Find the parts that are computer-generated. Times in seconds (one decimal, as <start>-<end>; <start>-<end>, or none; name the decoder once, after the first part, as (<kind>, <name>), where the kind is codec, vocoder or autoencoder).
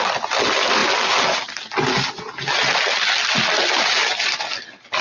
none